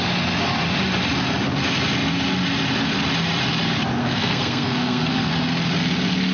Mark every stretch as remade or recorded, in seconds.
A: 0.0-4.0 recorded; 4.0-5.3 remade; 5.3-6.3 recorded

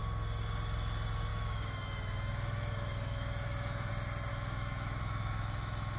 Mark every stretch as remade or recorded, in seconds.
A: 0.0-1.3 recorded; 1.3-3.9 remade; 3.9-4.3 recorded; 4.3-6.0 remade

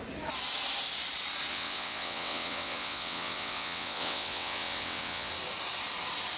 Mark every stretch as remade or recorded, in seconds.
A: 0.0-1.5 recorded; 1.5-5.3 remade; 5.3-6.4 recorded